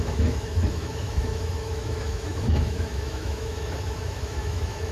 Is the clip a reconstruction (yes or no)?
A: yes